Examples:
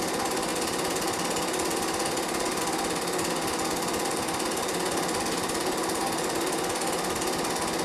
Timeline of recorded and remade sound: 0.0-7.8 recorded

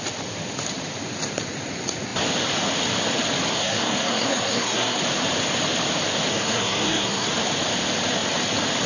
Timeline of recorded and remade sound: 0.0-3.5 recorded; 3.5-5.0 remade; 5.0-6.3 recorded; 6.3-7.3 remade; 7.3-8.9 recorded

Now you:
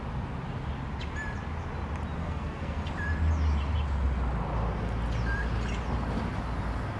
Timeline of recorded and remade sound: 0.0-2.2 recorded; 2.2-2.9 remade; 2.9-7.0 recorded

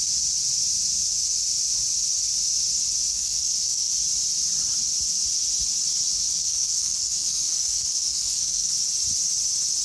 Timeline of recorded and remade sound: 0.0-3.1 recorded; 3.1-3.9 remade; 3.9-6.3 recorded; 6.3-8.7 remade; 8.7-9.8 recorded

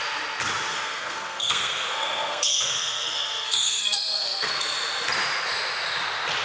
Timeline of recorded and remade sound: 0.0-0.7 recorded; 0.7-4.5 remade; 4.5-6.4 recorded